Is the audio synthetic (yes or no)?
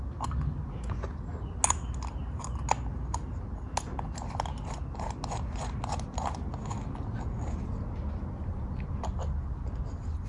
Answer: no